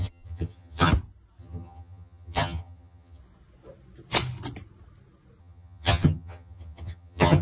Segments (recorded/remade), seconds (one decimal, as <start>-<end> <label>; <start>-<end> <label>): 0.0-0.9 remade; 0.9-1.4 recorded; 1.4-3.2 remade; 3.2-5.4 recorded; 5.4-7.4 remade